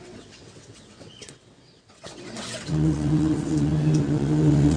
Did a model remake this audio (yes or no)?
yes